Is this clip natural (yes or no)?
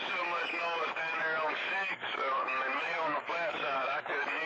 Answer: no